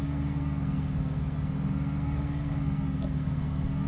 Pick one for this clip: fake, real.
fake